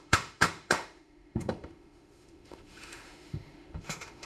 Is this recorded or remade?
remade